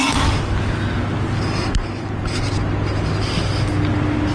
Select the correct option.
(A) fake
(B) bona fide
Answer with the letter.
B